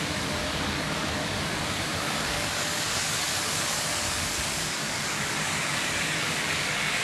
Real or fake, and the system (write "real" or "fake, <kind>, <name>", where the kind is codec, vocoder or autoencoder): fake, codec, DAC